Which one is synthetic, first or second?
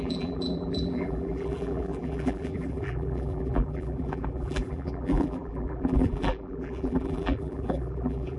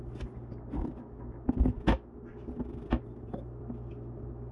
first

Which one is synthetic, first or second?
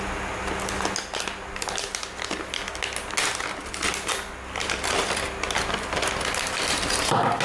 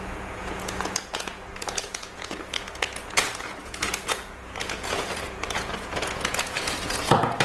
second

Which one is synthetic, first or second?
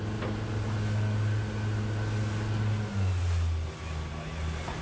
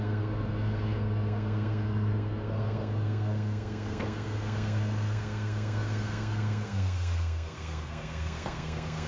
second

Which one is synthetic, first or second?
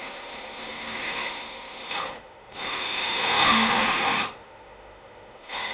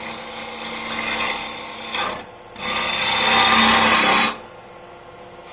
first